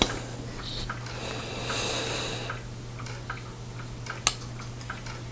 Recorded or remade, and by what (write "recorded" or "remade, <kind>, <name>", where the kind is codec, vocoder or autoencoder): recorded